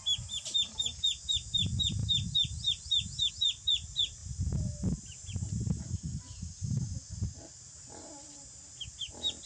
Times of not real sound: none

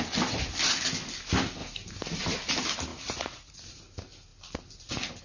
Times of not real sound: 2.9-3.8

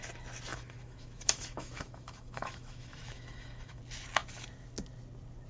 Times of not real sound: 0.5-3.8

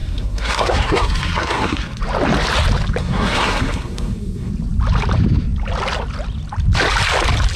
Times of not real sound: 0.0-2.0; 3.0-4.5

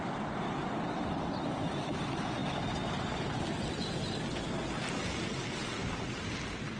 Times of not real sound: none